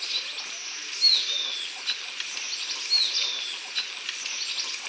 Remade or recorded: recorded